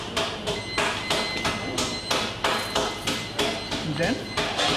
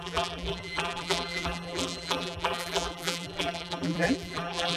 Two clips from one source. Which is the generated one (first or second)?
second